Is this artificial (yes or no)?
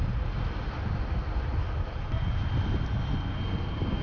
no